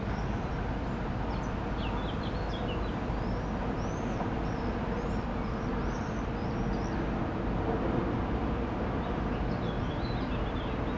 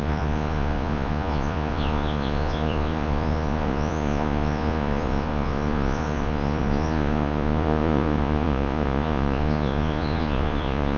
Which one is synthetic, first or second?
second